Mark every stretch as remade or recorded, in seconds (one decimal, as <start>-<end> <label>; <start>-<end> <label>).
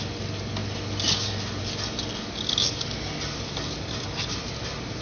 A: 0.0-5.0 recorded